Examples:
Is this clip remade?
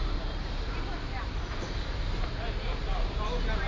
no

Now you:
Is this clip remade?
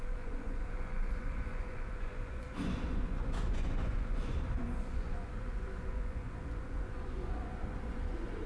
yes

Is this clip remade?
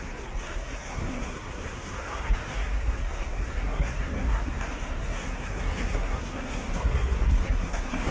yes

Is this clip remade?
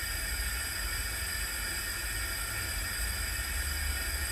no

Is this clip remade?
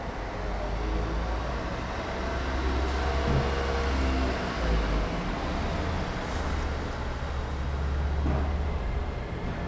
no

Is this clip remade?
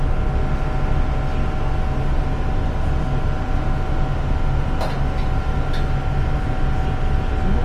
no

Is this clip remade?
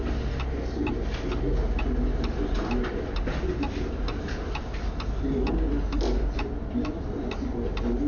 no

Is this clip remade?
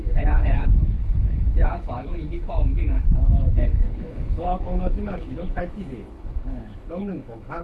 yes